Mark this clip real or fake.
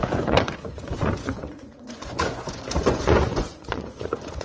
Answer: fake